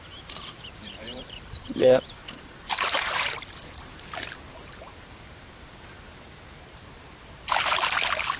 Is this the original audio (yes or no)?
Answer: no